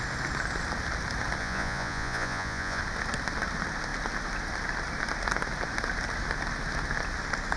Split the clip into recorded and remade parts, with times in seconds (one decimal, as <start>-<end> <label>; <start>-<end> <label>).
0.0-1.4 recorded; 1.4-2.8 remade; 2.8-7.6 recorded